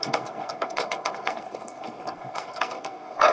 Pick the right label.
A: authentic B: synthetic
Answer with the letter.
B